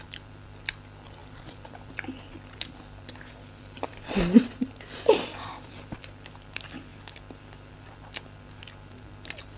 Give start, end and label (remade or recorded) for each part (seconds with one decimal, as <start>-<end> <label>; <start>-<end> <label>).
0.0-1.2 recorded; 1.2-6.3 remade; 6.3-9.6 recorded